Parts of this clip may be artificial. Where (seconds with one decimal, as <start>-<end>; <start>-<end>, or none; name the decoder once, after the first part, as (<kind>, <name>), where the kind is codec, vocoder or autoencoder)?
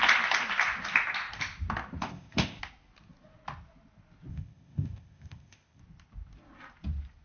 2.0-2.6 (codec, ZipCodec); 4.3-5.8